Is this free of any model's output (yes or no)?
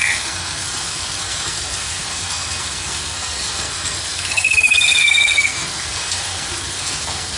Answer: no